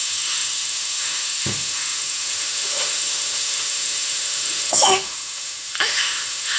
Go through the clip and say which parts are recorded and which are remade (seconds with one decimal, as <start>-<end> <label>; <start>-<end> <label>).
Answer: 0.0-6.6 remade

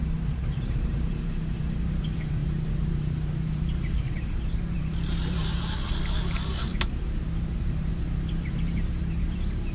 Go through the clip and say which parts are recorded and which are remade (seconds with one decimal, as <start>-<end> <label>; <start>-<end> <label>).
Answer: 0.0-9.7 remade

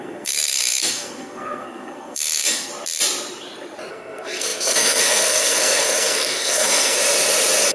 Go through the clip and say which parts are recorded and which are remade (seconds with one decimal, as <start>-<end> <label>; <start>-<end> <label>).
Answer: 0.0-2.7 remade; 2.7-3.9 recorded; 3.9-7.0 remade; 7.0-7.7 recorded

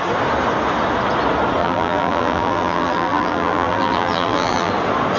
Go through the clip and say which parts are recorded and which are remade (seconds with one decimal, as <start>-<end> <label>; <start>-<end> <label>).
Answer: 0.0-1.6 recorded; 1.6-4.7 remade; 4.7-5.2 recorded

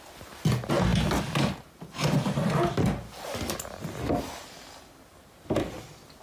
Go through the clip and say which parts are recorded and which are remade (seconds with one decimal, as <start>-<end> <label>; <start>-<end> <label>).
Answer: 0.0-6.2 recorded